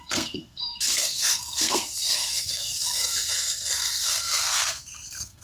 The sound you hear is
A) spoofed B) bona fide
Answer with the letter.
A